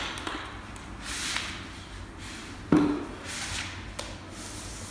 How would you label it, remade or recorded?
recorded